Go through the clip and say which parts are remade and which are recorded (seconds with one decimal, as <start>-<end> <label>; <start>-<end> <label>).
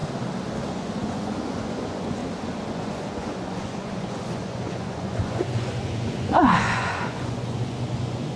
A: 0.0-0.7 recorded; 0.7-2.2 remade; 2.2-2.7 recorded; 2.7-8.4 remade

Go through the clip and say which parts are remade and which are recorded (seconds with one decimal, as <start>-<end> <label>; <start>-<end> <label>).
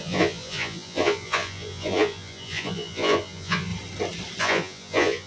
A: 0.0-3.7 remade; 3.7-4.4 recorded; 4.4-5.3 remade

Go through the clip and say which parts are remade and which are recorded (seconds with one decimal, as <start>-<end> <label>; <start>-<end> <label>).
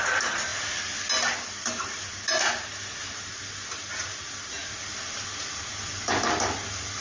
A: 0.0-7.0 recorded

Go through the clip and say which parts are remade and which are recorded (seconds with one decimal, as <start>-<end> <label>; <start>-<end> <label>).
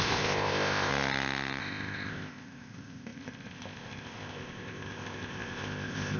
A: 0.0-0.9 remade; 0.9-1.6 recorded; 1.6-6.2 remade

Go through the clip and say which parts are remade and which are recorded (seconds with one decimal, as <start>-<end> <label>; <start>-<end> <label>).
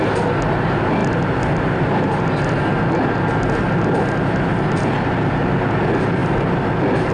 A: 0.0-7.1 recorded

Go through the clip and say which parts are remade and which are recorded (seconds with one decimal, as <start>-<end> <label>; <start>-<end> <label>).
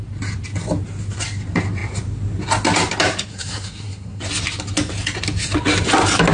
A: 0.0-3.3 recorded; 3.3-4.2 remade; 4.2-6.3 recorded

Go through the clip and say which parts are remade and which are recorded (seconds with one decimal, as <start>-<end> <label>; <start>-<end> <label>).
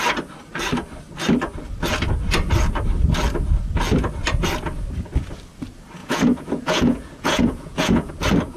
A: 0.0-6.0 recorded; 6.0-8.1 remade; 8.1-8.6 recorded